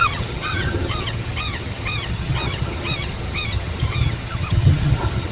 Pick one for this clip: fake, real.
fake